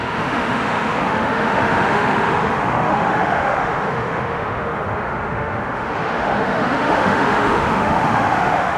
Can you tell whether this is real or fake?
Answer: fake